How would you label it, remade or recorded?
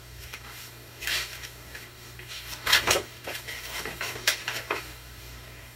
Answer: remade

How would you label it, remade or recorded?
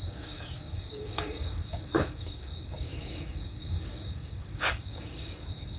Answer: remade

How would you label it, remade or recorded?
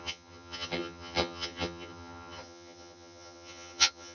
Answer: remade